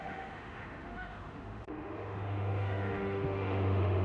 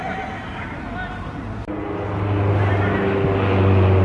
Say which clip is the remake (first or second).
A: first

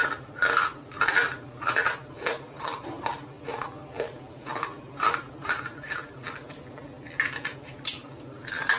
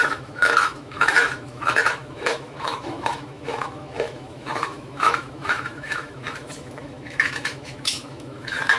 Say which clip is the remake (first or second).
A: second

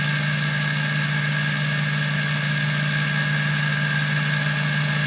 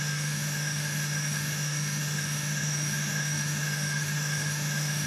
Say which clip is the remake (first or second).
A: second